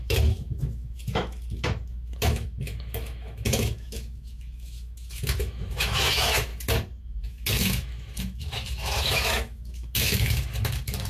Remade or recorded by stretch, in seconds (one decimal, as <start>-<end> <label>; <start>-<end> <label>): 0.0-6.5 remade; 6.5-7.0 recorded; 7.0-11.1 remade